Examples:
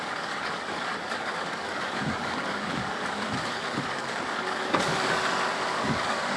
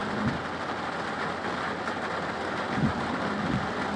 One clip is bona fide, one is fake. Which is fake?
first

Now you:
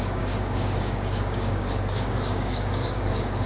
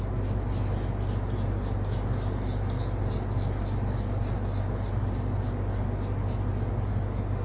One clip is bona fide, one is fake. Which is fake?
first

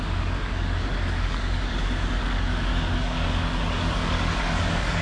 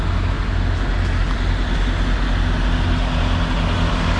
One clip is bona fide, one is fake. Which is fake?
first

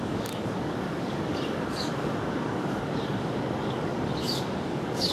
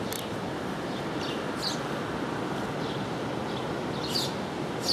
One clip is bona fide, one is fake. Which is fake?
first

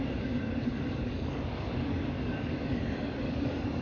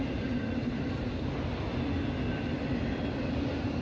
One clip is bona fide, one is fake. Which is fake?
first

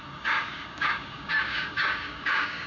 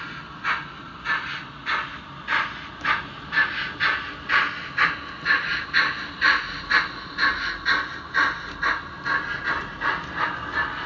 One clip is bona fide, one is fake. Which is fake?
first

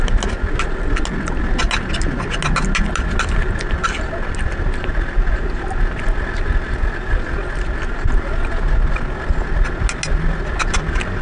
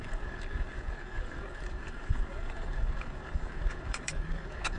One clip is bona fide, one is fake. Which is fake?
second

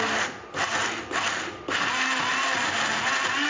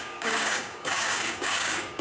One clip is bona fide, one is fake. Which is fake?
second